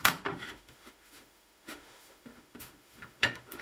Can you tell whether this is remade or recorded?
remade